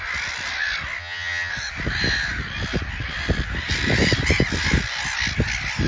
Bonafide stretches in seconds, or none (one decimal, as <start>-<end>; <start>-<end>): 0.0-1.0; 1.5-5.9